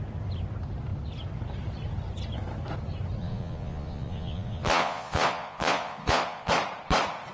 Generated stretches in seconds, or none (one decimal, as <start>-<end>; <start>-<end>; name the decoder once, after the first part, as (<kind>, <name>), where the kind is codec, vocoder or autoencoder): 3.2-6.5 (vocoder, Vocos)

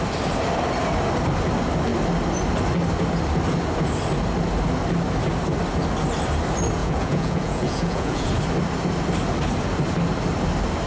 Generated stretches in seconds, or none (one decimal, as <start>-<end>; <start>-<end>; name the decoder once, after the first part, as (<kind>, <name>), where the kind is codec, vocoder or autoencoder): 6.8-8.3 (vocoder, Vocos)

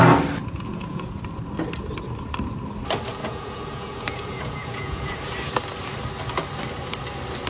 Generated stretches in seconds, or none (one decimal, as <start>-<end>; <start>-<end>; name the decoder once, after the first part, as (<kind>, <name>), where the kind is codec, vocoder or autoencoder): 0.4-1.2 (vocoder, Vocos); 3.2-5.2

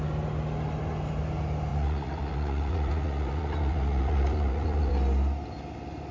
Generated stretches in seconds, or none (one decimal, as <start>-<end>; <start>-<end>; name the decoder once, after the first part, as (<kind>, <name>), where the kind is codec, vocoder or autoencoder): 1.7-4.9 (vocoder, Vocos)

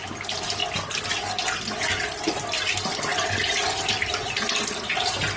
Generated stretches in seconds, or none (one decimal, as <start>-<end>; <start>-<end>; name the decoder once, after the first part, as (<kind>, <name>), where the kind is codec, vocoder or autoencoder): none

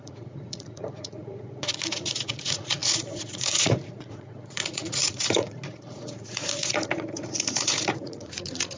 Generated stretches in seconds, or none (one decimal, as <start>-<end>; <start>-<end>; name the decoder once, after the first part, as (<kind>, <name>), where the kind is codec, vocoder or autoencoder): 0.0-8.8 (vocoder, Vocos)